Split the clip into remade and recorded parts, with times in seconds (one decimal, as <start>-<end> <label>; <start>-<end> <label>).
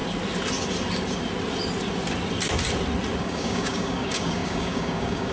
0.0-3.2 recorded; 3.2-5.3 remade